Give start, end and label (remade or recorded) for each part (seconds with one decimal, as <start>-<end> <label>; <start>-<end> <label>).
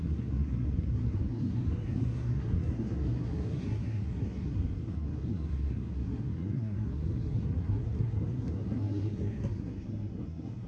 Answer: 0.0-10.7 remade